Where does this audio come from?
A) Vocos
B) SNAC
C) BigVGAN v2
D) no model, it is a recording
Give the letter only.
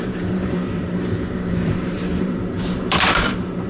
C